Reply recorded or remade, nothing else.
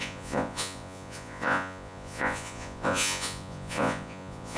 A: remade